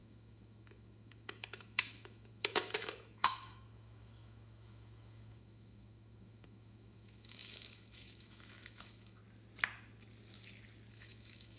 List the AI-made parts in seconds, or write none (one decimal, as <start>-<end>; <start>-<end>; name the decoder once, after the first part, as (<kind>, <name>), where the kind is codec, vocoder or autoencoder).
0.0-9.2 (autoencoder, DAC-VAE); 10.9-11.6

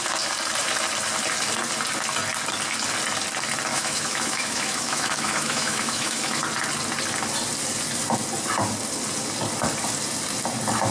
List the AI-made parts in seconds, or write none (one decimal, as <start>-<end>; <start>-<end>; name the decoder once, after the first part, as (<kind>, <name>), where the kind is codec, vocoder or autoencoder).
3.7-6.4 (autoencoder, DAC-VAE)